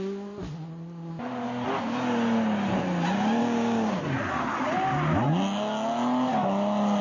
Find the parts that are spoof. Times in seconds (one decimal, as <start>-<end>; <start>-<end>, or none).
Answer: 3.4-4.0